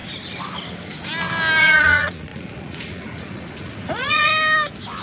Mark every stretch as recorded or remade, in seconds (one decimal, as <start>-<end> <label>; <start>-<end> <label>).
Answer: 0.0-1.6 recorded; 1.6-4.3 remade; 4.3-5.0 recorded